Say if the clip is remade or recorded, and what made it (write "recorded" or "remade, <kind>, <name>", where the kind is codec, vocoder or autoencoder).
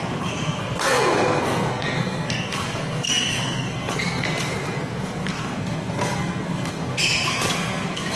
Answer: remade, codec, SNAC